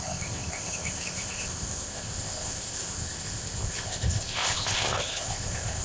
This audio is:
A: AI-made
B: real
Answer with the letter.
A